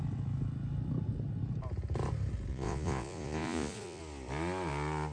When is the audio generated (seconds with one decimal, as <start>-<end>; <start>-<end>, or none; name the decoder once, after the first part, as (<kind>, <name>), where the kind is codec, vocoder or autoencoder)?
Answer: 2.5-4.0 (vocoder, Vocos)